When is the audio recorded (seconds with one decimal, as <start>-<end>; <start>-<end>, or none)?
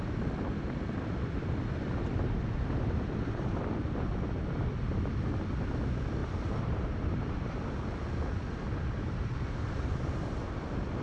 0.0-6.2; 7.3-11.0